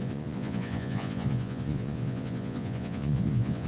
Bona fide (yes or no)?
no